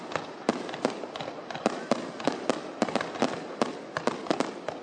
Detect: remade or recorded recorded